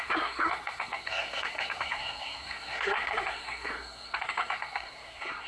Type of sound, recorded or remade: remade